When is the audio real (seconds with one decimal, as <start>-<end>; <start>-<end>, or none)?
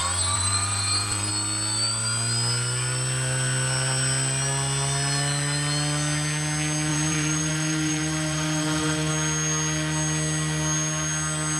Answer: 1.3-6.9; 9.1-11.6